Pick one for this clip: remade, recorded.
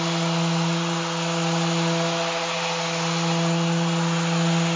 recorded